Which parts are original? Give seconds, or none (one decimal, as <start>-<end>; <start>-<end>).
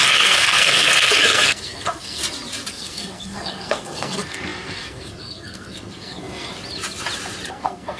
2.2-2.7; 6.5-7.5